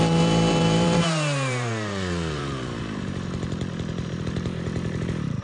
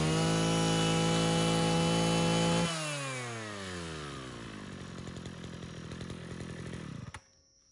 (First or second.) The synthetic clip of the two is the first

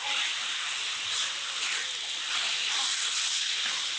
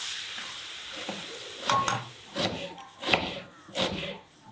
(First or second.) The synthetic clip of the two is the second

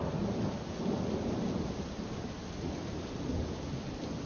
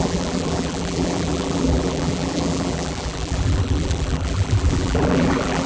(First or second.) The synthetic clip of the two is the second